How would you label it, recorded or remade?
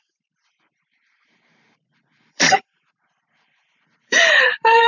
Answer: remade